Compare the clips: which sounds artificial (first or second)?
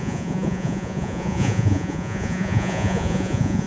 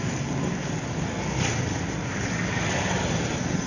first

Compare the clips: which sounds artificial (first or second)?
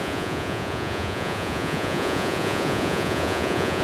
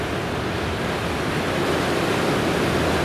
first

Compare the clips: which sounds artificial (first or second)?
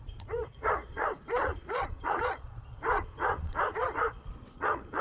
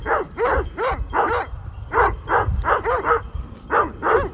first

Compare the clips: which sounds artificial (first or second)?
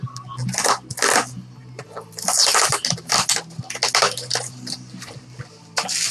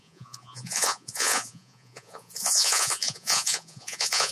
second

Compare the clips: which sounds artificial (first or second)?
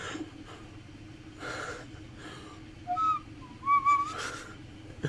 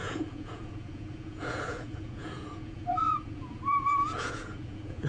second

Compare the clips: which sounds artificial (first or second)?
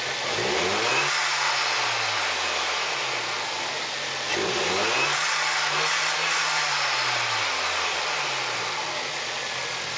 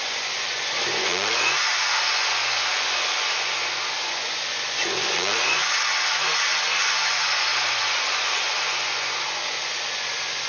second